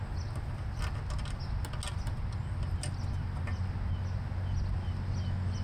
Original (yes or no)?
yes